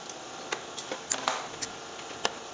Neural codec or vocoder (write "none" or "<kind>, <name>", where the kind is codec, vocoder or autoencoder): none